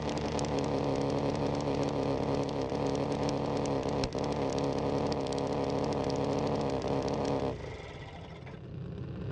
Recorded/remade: recorded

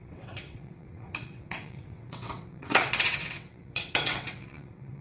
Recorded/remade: remade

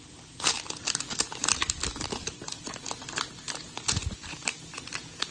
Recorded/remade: recorded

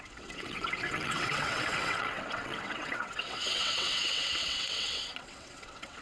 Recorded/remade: remade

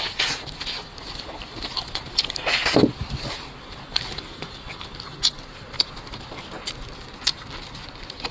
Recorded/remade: recorded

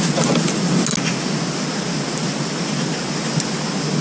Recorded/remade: recorded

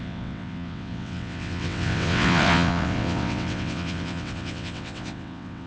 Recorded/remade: remade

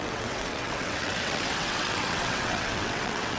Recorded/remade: remade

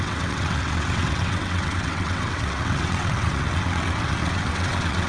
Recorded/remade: remade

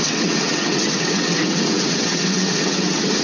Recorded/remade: remade